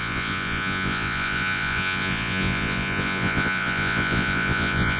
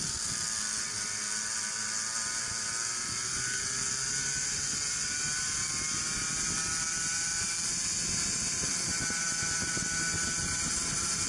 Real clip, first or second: second